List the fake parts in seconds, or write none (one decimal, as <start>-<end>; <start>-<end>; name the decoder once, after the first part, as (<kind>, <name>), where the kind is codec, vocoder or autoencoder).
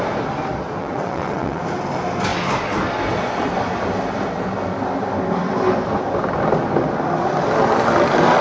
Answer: 0.8-1.6 (vocoder, WaveNeXt)